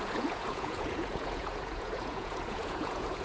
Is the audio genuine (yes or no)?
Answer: no